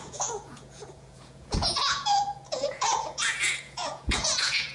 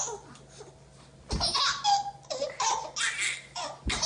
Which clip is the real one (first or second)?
second